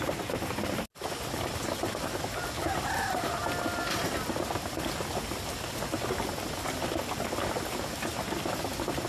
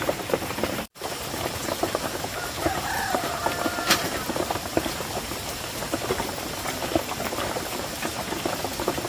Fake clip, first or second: second